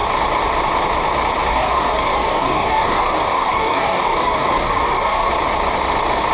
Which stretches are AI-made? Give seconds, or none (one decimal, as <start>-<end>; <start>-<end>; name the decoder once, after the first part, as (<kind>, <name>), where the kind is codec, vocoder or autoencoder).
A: 1.5-5.3 (codec, DAC)